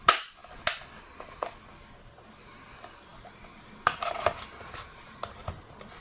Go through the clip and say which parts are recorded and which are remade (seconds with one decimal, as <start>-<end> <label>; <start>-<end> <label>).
0.0-6.0 recorded